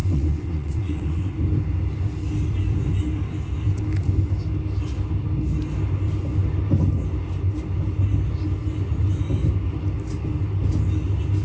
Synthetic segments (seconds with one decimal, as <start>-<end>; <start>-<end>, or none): 0.0-1.3